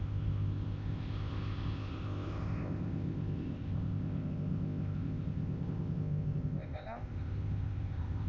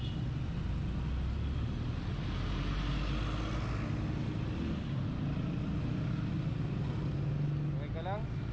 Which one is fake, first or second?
first